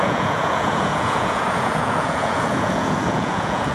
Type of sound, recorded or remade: remade